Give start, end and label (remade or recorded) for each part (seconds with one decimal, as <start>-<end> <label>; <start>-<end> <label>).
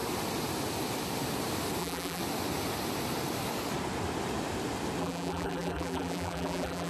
0.0-1.8 recorded; 1.8-2.2 remade; 2.2-5.0 recorded; 5.0-6.9 remade